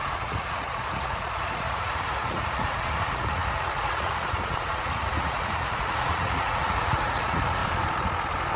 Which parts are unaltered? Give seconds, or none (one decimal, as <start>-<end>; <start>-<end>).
7.6-8.6